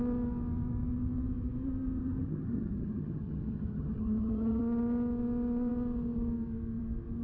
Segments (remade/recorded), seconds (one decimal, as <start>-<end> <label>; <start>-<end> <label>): 0.0-2.0 recorded; 2.0-4.6 remade; 4.6-7.2 recorded